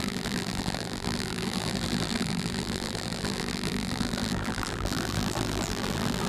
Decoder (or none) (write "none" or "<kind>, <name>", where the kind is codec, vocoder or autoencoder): vocoder, BigVGAN v2